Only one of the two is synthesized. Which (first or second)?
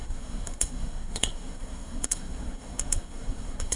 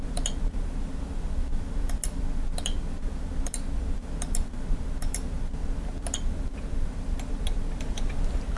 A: first